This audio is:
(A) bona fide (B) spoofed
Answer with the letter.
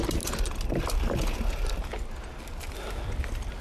A